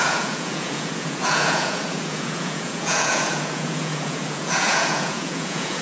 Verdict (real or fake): fake